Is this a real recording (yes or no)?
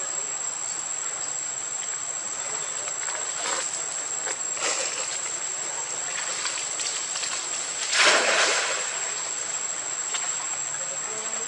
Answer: yes